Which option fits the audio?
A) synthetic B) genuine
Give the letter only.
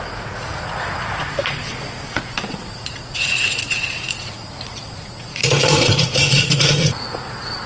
A